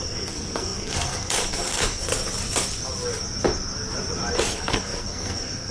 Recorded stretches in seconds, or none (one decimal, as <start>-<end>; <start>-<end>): 2.1-4.4